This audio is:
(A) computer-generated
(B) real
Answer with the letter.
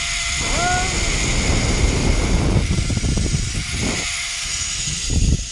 B